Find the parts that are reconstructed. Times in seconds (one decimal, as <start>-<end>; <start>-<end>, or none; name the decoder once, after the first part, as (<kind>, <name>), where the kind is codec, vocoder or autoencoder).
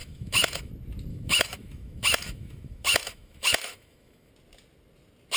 0.0-0.7 (autoencoder, DAC-VAE); 1.1-4.3